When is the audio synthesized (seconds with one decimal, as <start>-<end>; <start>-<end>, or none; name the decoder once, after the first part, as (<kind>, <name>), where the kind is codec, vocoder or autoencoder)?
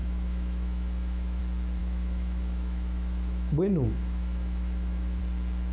0.0-1.4 (autoencoder, DAC-VAE); 1.8-5.2